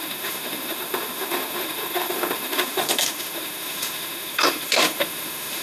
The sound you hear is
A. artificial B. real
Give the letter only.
A